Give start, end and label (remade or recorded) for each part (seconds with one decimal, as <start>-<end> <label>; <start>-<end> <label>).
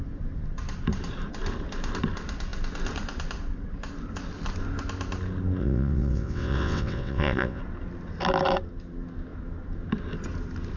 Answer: 0.0-5.6 recorded; 5.6-7.6 remade; 7.6-10.8 recorded